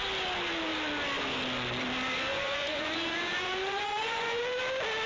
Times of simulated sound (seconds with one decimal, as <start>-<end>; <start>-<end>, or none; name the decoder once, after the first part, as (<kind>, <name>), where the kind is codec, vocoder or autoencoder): 2.3-4.4 (vocoder, Vocos)